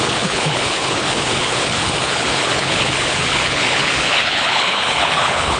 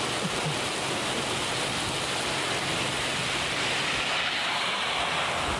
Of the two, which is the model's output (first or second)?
first